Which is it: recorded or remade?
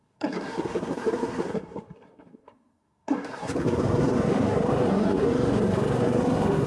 remade